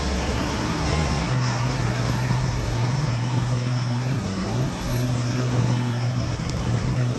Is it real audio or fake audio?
fake